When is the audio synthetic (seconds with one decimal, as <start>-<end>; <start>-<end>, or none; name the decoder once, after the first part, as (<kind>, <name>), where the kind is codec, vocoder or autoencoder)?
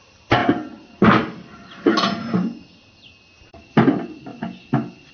0.0-0.4 (vocoder, BigVGAN v2); 3.5-4.3